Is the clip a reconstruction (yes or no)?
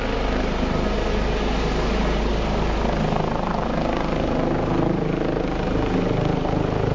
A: no